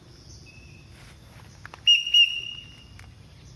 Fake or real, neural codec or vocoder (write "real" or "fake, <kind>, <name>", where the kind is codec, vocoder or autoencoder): real